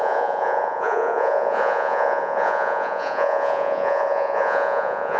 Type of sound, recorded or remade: remade